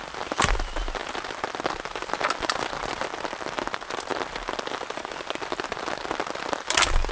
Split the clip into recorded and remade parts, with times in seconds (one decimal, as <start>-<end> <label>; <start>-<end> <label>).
0.0-7.1 recorded